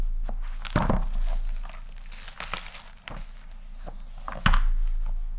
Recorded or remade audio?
recorded